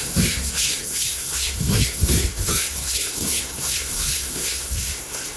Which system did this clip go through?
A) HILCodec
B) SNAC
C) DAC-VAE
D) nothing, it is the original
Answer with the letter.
B